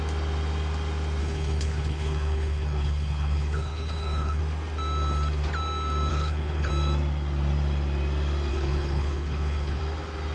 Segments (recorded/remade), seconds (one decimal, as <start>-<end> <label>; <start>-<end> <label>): 0.0-1.2 recorded; 1.2-4.4 remade; 4.4-6.1 recorded; 6.1-6.7 remade; 6.7-8.5 recorded; 8.5-9.8 remade; 9.8-10.3 recorded